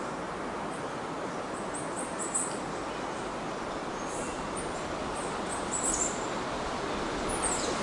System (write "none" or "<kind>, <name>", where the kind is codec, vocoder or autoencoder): vocoder, BigVGAN v2